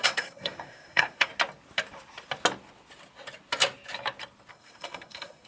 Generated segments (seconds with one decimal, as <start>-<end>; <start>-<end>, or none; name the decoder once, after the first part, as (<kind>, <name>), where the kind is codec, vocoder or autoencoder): 0.0-1.3 (codec, SNAC); 4.5-5.5